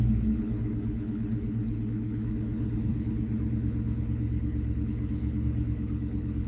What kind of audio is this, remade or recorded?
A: remade